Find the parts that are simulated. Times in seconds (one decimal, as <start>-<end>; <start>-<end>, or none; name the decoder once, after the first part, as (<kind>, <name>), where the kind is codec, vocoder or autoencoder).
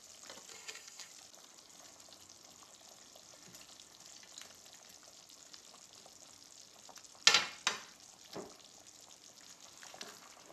0.5-1.1 (codec, SNAC)